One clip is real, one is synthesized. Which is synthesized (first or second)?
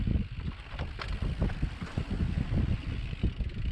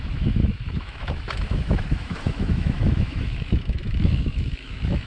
second